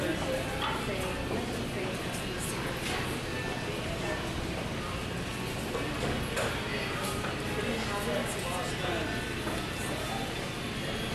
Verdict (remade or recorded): recorded